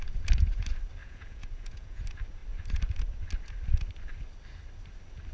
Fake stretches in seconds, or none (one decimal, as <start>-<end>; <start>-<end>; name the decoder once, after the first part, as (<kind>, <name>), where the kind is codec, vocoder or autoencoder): 1.0-2.0 (vocoder, Vocos)